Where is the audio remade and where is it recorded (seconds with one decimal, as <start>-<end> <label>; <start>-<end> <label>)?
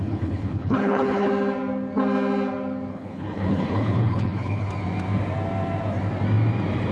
0.0-1.3 remade; 1.3-2.9 recorded; 2.9-4.7 remade; 4.7-6.9 recorded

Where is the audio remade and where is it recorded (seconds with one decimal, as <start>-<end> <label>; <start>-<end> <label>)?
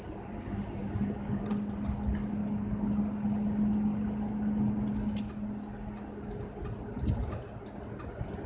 0.0-8.5 recorded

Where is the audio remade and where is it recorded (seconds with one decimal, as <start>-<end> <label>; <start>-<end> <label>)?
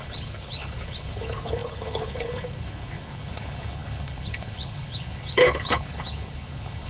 0.0-6.9 remade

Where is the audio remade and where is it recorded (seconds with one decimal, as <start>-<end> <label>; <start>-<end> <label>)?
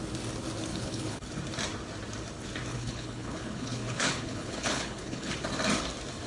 0.0-0.7 recorded; 0.7-1.3 remade; 1.3-2.7 recorded; 2.7-5.3 remade; 5.3-6.3 recorded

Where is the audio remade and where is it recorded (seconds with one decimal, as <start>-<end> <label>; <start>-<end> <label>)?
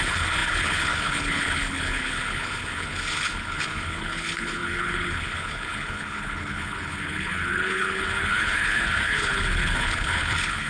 0.0-10.7 remade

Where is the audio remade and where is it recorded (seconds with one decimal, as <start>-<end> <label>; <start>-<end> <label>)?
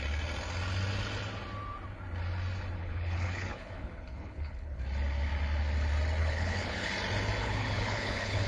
0.0-2.8 recorded; 2.8-4.8 remade; 4.8-6.2 recorded; 6.2-6.9 remade; 6.9-7.4 recorded; 7.4-8.5 remade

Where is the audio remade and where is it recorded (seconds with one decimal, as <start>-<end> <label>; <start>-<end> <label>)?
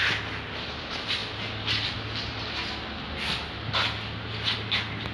0.0-5.1 recorded